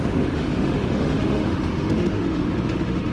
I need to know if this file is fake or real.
fake